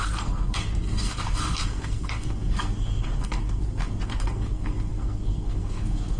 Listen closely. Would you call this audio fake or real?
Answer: fake